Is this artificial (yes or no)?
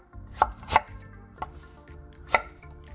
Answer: yes